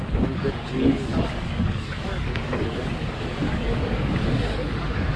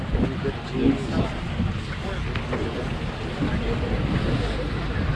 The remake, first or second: first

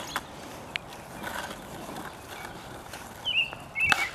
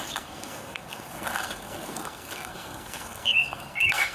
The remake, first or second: second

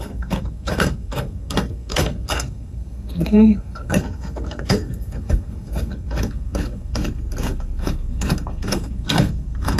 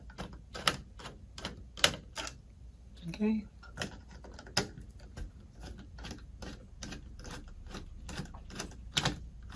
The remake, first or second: first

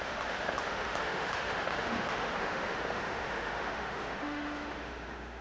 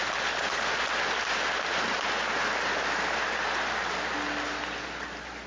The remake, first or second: first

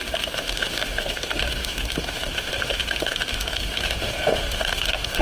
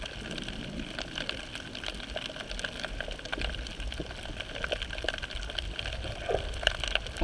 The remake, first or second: first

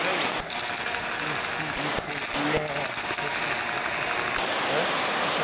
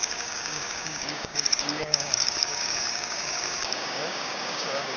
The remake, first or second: second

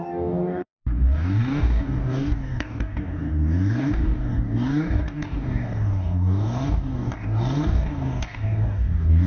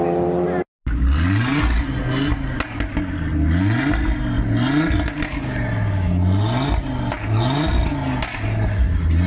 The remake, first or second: first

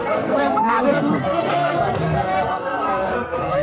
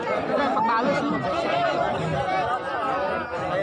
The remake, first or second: first